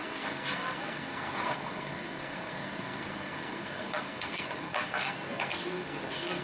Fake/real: fake